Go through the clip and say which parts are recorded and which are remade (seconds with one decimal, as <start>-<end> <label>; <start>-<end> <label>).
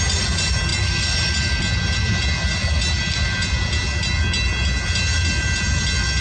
0.0-6.2 recorded